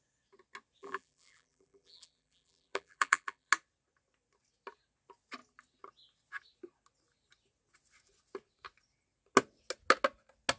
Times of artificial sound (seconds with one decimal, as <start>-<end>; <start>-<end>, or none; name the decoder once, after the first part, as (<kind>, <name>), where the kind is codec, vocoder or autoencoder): 0.8-3.5 (vocoder, BigVGAN v2)